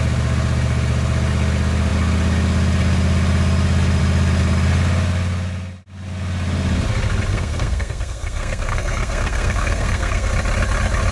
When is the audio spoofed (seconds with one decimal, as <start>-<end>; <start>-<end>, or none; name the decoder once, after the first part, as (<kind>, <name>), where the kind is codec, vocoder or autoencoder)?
7.3-10.3 (codec, SNAC)